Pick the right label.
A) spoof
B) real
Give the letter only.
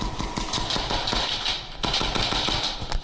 B